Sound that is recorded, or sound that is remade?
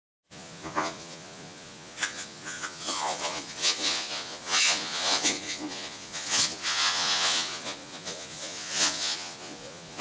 remade